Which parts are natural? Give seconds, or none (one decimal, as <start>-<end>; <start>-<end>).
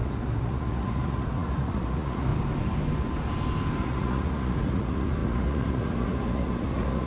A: 2.3-3.8